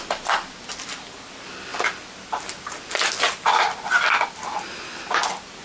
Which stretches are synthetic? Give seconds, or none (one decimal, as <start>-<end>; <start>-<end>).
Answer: none